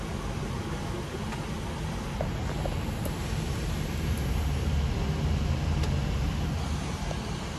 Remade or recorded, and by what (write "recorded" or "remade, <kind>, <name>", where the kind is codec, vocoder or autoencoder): recorded